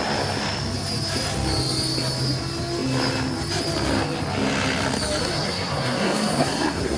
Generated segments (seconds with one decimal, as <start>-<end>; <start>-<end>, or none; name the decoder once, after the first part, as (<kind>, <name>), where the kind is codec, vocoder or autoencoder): 5.2-7.0 (codec, SNAC)